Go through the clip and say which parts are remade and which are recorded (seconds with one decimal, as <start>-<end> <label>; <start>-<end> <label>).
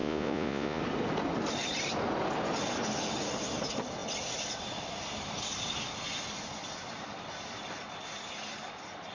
0.0-0.8 remade; 0.8-9.1 recorded